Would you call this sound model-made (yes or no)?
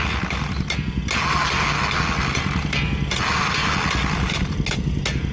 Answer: no